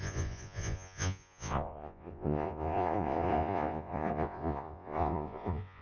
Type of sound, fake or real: fake